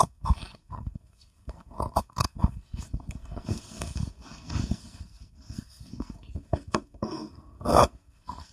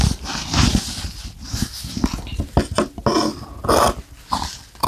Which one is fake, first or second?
first